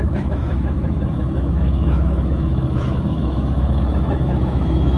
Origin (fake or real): fake